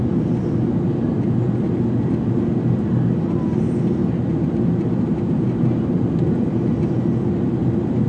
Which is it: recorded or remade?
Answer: recorded